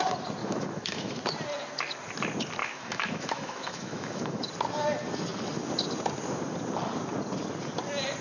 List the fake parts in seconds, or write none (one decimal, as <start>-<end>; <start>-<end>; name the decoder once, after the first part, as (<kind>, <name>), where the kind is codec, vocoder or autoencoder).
0.4-1.2 (autoencoder, DAC-VAE); 2.6-4.5